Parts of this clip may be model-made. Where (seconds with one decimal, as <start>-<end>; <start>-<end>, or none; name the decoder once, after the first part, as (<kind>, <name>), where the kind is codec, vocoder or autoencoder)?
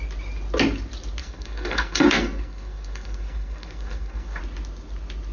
1.2-4.4 (codec, SNAC)